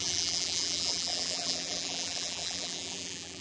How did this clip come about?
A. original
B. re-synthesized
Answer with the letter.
B